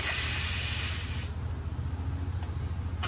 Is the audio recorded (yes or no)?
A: yes